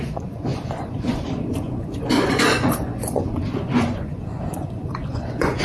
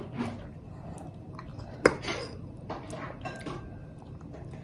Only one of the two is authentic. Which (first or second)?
second